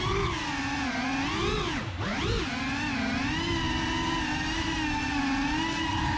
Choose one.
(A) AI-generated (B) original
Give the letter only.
B